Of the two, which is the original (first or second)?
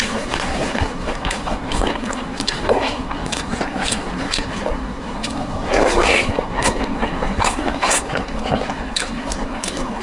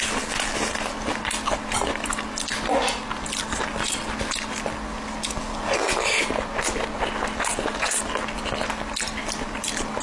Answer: second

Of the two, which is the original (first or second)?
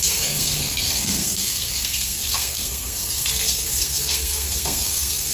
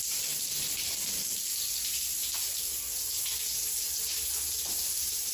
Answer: second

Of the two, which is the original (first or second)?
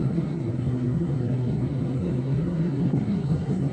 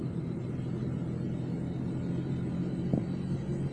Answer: second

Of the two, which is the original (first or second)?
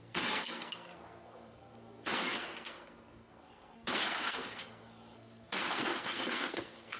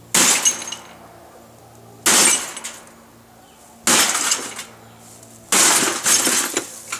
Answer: second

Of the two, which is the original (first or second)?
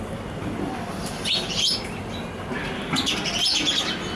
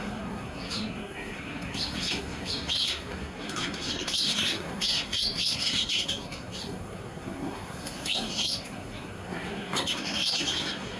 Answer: first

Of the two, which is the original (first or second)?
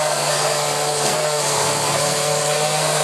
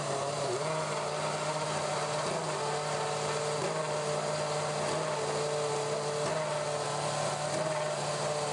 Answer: second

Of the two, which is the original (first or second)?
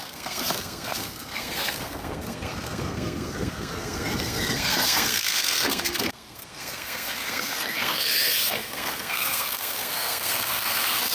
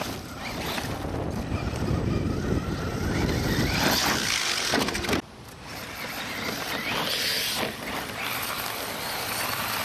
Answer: second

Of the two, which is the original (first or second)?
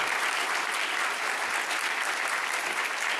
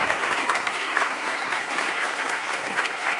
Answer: first